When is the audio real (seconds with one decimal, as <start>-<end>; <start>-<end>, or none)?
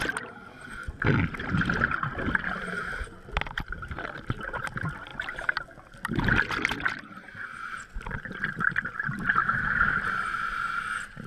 0.0-9.4; 10.0-11.3